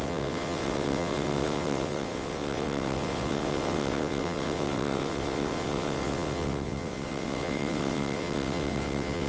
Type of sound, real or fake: fake